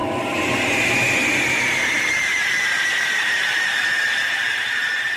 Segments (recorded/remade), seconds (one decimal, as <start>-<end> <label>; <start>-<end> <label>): 0.0-1.8 recorded; 1.8-5.2 remade